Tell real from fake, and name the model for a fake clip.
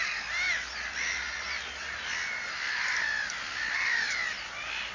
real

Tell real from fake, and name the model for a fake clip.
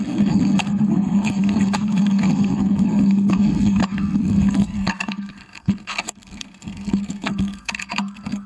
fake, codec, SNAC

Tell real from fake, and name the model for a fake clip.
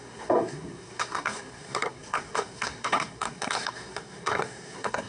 fake, codec, SNAC